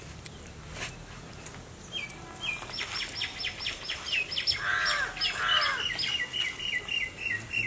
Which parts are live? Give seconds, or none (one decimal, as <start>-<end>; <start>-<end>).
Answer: 0.0-7.7